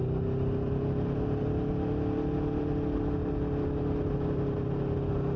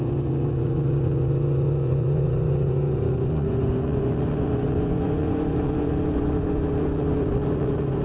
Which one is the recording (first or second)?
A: first